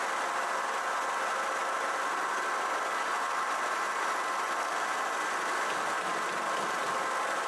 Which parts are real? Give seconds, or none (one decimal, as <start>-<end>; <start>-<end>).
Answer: 0.0-7.5